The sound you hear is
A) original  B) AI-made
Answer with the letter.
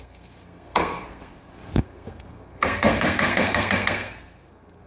B